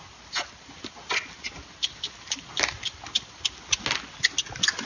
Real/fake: real